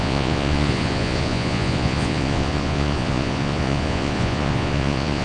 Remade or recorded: remade